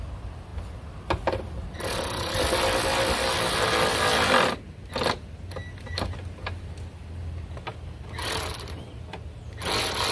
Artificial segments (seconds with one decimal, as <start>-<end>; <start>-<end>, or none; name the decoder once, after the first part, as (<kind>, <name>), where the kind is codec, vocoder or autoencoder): none